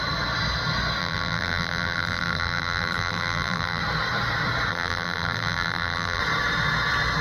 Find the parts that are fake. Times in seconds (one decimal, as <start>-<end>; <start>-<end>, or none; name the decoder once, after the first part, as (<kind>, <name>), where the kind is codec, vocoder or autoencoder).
1.0-3.8 (vocoder, BigVGAN v2); 4.7-6.2